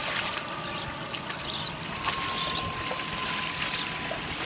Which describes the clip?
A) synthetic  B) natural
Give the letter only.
B